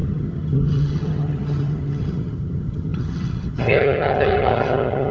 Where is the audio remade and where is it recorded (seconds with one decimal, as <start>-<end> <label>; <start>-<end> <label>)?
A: 0.0-5.1 remade